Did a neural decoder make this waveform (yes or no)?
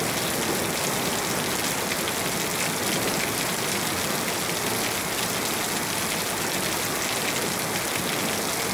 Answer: no